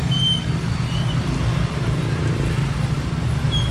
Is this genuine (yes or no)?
yes